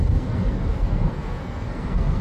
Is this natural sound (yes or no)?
no